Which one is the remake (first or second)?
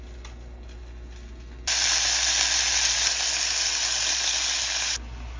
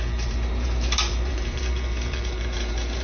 second